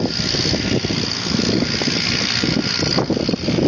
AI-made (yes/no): no